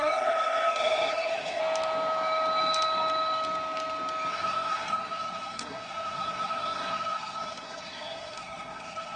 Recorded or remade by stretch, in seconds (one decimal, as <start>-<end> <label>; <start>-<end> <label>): 0.0-1.6 remade; 1.6-4.3 recorded; 4.3-9.2 remade